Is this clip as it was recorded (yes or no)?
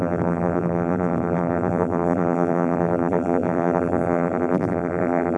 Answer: no